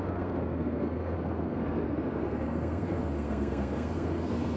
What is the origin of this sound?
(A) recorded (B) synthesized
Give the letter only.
B